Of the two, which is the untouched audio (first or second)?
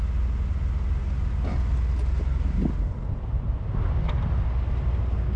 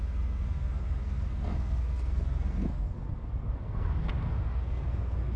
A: first